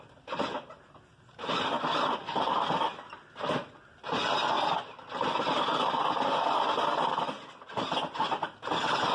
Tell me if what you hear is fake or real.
real